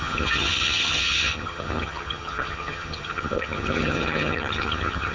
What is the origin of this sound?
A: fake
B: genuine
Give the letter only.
A